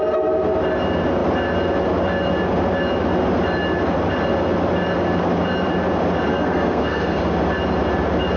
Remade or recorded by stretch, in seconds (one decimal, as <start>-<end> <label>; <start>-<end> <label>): 0.0-6.3 recorded; 6.3-7.2 remade; 7.2-8.4 recorded